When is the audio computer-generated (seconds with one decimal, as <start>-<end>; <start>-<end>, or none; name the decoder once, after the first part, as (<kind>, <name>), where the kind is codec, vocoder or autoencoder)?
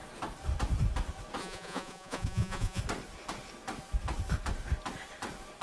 1.4-2.8 (vocoder, Vocos)